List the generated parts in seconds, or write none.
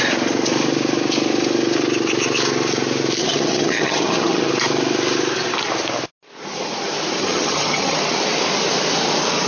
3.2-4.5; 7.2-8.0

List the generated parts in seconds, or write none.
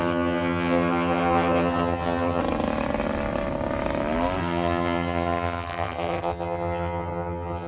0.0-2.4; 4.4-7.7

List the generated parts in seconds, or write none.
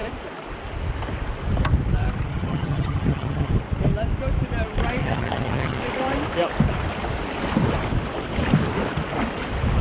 2.3-3.5; 5.0-5.8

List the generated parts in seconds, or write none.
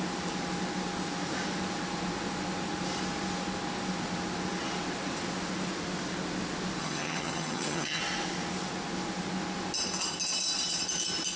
6.8-8.0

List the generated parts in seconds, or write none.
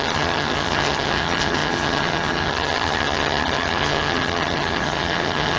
0.0-5.6